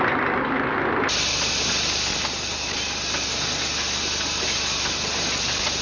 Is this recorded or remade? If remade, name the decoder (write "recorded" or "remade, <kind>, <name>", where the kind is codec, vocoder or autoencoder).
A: recorded